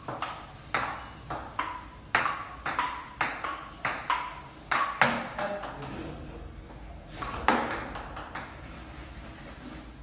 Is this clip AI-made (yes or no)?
no